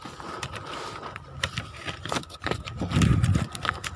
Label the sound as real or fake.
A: real